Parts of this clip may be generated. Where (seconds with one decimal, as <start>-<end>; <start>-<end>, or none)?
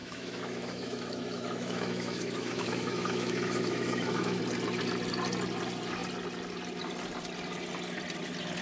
0.0-4.4